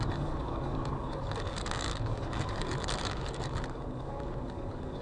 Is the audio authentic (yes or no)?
no